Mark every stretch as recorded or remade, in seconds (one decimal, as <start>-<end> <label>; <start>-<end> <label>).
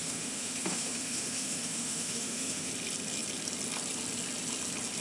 0.0-2.7 remade; 2.7-5.0 recorded